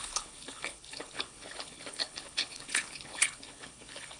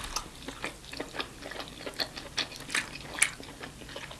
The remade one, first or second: first